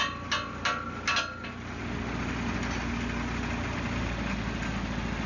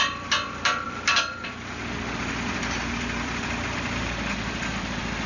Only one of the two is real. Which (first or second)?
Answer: first